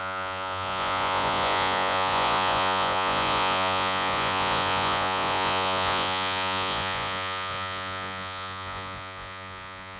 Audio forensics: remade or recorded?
remade